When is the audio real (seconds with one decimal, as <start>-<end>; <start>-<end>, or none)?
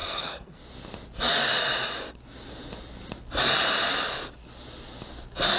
0.6-5.6